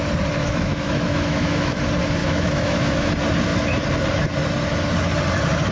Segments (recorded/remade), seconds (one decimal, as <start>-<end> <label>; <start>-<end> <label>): 0.0-0.4 recorded; 0.4-1.8 remade; 1.8-2.2 recorded; 2.2-3.1 remade; 3.1-5.7 recorded